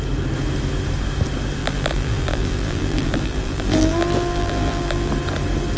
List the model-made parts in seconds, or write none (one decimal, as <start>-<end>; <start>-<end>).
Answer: 1.6-5.1